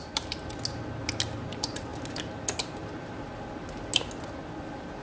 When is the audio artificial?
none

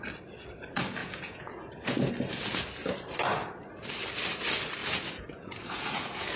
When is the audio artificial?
1.0-2.1 (vocoder, Vocos); 4.8-6.4

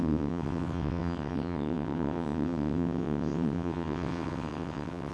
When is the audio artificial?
0.0-5.1 (vocoder, WaveNeXt)